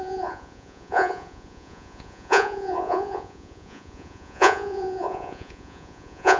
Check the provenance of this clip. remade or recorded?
remade